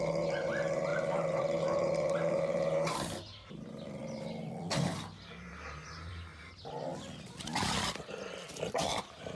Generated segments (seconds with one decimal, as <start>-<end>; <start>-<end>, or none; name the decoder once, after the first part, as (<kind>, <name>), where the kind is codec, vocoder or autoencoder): 0.0-4.0 (vocoder, BigVGAN v2); 5.3-6.3; 8.5-9.4